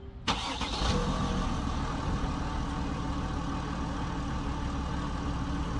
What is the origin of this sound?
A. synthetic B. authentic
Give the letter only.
B